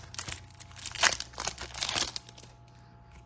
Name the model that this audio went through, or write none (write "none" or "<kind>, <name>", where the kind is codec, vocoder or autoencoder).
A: none